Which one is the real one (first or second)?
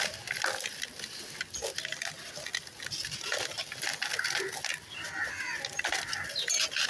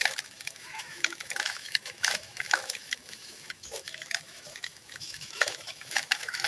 first